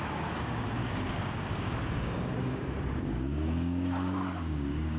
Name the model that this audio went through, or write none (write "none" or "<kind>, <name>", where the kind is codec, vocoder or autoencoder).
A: codec, DAC